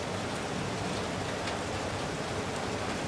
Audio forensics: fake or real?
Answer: real